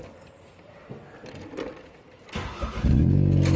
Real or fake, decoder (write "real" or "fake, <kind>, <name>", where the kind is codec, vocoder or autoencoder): real